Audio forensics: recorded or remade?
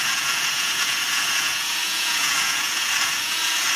remade